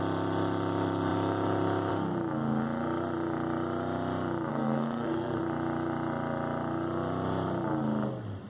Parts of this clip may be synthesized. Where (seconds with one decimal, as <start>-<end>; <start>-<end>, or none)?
4.5-5.4